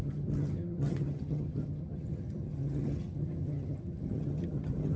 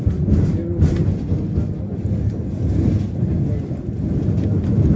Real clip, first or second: second